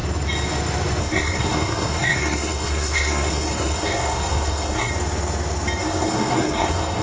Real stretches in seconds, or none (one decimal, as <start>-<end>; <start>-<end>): 0.0-1.0; 4.9-5.8